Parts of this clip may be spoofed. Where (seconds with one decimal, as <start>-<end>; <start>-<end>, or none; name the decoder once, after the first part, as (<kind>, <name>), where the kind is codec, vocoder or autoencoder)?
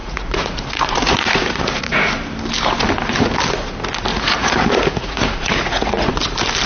0.0-2.1 (vocoder, Vocos); 4.1-6.2